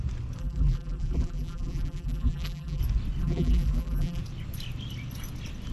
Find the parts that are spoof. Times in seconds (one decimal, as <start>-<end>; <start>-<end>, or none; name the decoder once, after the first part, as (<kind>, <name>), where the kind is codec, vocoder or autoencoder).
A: 0.4-2.8 (vocoder, BigVGAN v2); 3.2-4.2